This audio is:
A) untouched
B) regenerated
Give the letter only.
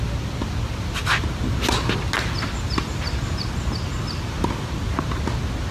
A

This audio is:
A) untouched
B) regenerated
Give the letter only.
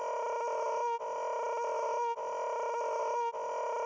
A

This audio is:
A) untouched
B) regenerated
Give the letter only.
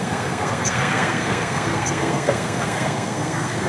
B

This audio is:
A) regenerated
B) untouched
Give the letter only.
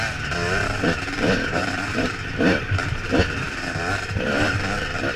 B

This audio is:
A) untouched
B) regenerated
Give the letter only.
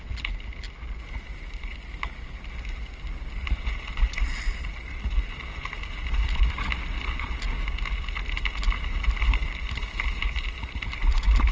A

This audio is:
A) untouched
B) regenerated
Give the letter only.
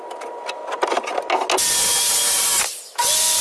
A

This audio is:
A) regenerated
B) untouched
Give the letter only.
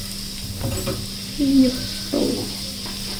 B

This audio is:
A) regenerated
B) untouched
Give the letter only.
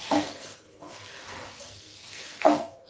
A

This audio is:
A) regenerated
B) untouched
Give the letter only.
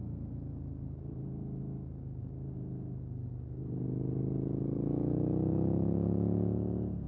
B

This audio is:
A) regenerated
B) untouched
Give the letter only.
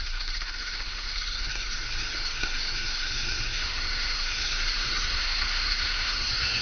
A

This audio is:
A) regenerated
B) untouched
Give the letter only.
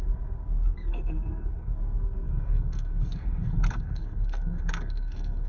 A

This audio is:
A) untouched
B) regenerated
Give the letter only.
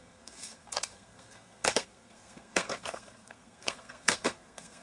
B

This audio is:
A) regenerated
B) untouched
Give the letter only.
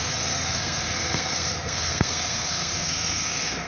A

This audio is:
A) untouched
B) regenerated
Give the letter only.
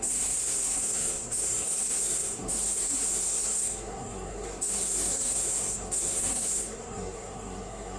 B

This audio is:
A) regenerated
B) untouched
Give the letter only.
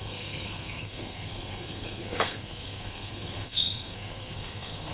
A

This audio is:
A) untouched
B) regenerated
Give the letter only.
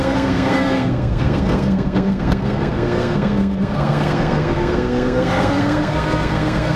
B